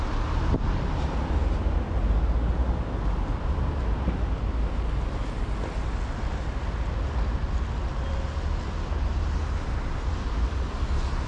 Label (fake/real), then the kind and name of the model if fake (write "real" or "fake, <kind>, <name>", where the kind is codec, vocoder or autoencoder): real